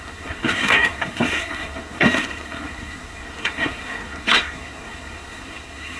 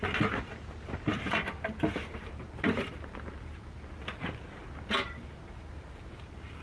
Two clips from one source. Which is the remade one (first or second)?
first